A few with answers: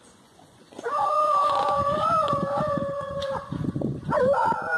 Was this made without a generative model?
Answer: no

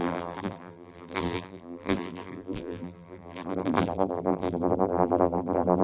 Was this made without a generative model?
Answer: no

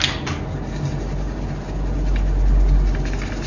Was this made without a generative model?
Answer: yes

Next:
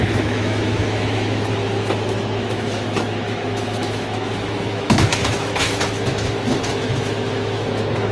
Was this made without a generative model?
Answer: no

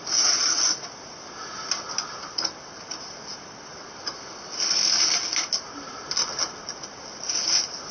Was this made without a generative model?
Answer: yes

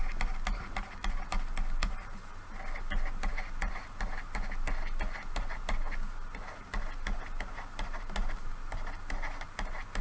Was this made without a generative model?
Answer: yes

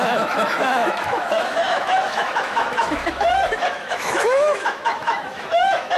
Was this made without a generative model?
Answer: no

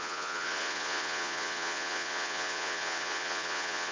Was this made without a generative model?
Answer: no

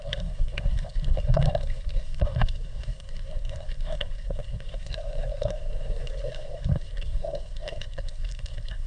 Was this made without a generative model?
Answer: no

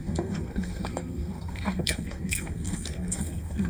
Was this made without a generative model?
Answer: no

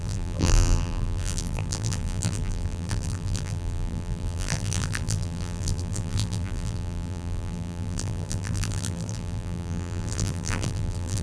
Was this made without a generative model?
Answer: no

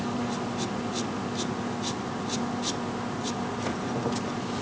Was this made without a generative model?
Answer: yes